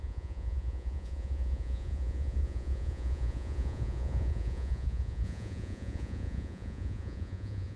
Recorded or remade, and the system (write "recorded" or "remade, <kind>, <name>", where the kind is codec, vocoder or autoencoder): remade, vocoder, Vocos